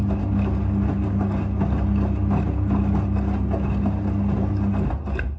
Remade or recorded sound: recorded